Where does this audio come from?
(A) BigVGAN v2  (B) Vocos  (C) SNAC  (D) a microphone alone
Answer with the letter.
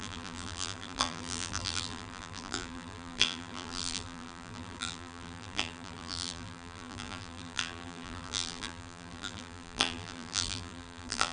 A